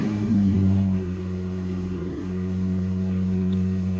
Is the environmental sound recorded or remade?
remade